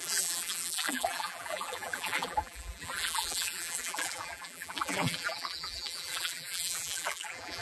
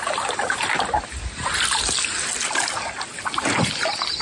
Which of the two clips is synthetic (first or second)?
first